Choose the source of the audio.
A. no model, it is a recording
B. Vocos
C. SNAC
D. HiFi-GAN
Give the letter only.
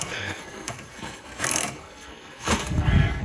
C